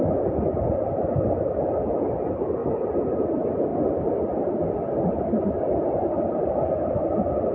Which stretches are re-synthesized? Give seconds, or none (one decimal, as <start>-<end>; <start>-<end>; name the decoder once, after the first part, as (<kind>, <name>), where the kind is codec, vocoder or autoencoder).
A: none